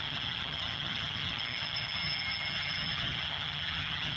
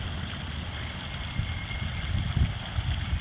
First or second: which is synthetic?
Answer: first